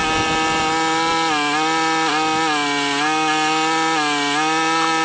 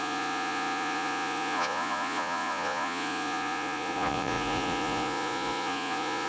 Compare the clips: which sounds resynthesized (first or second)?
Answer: second